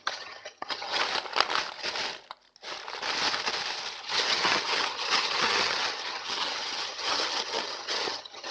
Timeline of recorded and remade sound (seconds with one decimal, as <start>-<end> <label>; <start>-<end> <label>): 0.0-1.0 remade; 1.0-4.0 recorded; 4.0-8.5 remade

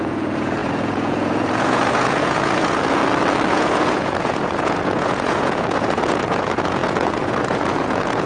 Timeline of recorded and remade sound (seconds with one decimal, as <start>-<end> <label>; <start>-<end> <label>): 0.0-3.0 remade; 3.0-3.5 recorded; 3.5-8.3 remade

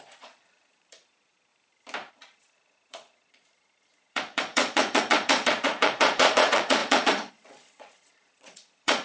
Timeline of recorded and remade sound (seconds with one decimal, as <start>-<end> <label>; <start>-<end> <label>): 0.0-1.5 remade; 1.5-2.1 recorded; 2.1-9.0 remade

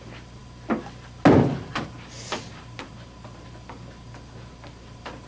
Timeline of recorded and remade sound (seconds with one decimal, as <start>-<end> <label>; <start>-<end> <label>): 0.0-5.3 recorded

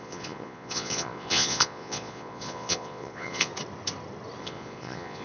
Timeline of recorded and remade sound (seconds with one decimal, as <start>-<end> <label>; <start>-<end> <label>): 0.0-3.5 remade; 3.5-4.4 recorded; 4.4-5.2 remade

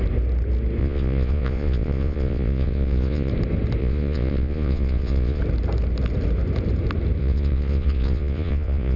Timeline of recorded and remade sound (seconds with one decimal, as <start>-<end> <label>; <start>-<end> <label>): 0.0-0.8 recorded; 0.8-3.3 remade; 3.3-3.8 recorded; 3.8-5.4 remade; 5.4-7.2 recorded; 7.2-9.0 remade

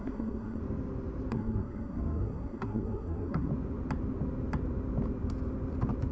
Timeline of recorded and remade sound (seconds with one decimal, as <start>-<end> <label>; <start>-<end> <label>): 0.0-0.6 remade; 0.6-1.3 recorded; 1.3-3.5 remade; 3.5-6.1 recorded